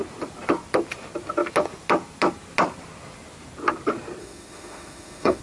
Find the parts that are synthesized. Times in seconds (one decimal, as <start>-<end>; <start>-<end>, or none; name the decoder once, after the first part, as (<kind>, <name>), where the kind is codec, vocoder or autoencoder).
4.2-5.4 (autoencoder, DAC-VAE)